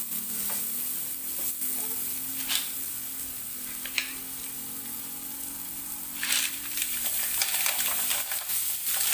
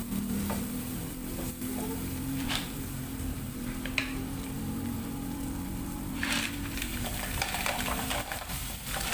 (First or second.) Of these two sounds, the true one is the first